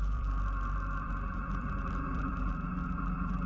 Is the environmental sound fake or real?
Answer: fake